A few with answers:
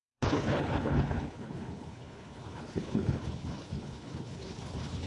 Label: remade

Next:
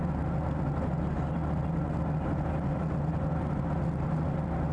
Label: recorded